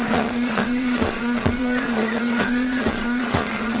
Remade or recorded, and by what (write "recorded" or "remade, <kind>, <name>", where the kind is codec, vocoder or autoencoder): remade, vocoder, Vocos